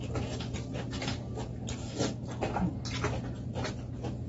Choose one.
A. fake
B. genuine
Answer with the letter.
B